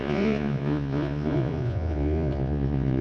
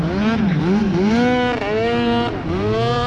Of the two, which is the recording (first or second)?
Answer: second